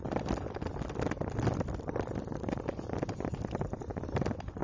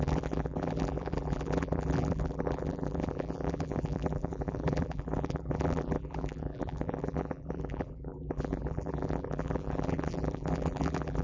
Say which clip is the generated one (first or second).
second